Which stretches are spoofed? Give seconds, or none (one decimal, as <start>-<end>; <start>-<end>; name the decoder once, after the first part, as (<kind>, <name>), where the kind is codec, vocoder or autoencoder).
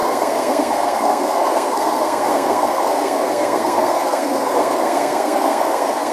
0.0-6.1 (codec, SNAC)